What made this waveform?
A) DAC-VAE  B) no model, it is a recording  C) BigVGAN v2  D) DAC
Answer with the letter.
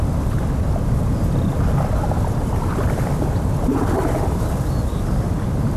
B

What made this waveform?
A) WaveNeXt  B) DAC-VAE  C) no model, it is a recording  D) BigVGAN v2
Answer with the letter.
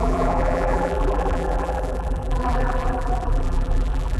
D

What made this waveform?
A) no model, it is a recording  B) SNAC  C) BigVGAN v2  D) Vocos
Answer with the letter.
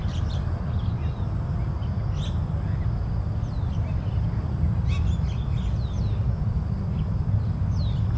A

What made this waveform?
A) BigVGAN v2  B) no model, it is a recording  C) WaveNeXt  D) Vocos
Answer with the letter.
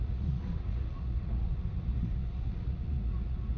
D